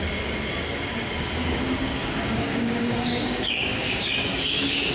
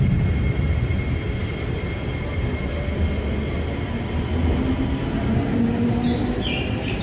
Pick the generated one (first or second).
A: first